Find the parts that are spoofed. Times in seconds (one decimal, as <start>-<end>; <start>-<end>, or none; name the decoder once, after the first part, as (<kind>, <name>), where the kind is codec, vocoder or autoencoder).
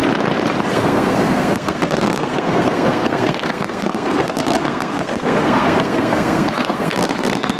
0.7-7.6 (codec, SNAC)